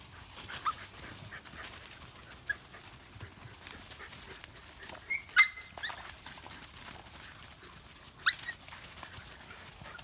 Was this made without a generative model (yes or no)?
yes